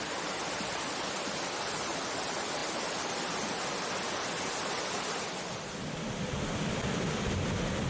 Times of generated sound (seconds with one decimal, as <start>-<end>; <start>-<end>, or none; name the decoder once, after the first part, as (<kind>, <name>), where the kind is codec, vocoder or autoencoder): none